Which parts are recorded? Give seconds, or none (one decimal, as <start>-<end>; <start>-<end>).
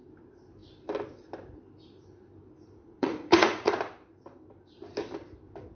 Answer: 0.0-2.8; 3.8-5.7